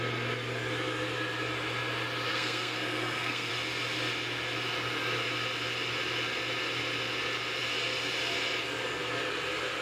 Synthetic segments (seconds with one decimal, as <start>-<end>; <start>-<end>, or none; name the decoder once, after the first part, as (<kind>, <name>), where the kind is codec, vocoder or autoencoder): 2.3-3.5 (codec, SNAC)